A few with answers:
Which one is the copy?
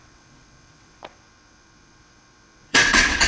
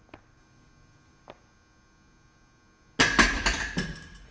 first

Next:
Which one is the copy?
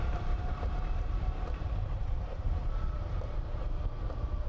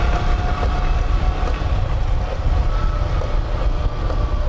first